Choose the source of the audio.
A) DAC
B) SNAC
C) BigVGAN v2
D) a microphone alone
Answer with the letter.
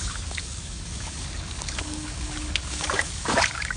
A